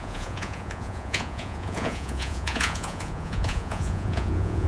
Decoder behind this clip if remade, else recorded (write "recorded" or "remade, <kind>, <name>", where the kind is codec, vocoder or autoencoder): remade, vocoder, Vocos